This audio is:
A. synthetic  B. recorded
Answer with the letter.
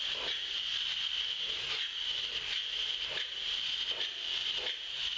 B